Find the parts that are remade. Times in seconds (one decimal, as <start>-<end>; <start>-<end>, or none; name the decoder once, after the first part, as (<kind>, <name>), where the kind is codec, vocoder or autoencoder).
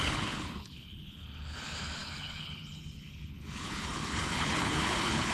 0.0-5.3 (codec, HILCodec)